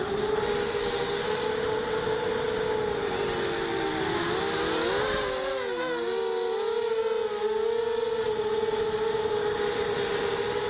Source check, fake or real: real